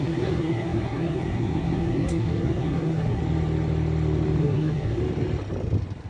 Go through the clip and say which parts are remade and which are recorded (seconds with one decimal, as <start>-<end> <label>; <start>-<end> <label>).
0.0-3.2 remade; 3.2-4.4 recorded; 4.4-5.0 remade; 5.0-6.1 recorded